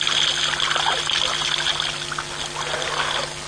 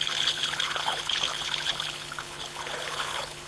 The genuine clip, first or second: first